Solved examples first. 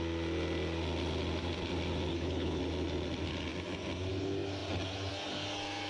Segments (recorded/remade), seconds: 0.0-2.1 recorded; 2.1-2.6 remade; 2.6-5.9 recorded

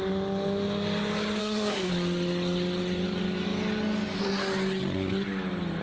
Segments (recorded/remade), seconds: 0.0-1.4 recorded; 1.4-1.9 remade; 1.9-5.8 recorded

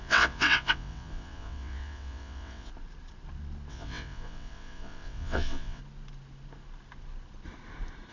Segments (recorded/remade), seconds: 0.0-2.7 remade; 2.7-3.7 recorded; 3.7-5.8 remade; 5.8-8.1 recorded